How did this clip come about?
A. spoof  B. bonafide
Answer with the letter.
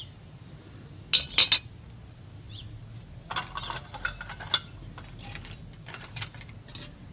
B